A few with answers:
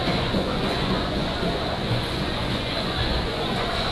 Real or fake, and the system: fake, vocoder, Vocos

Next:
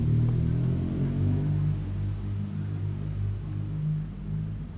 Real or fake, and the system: real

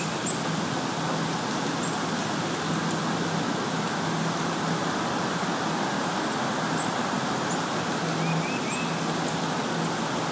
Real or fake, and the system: real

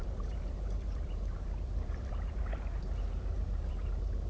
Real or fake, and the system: fake, vocoder, BigVGAN v2